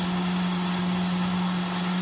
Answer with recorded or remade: recorded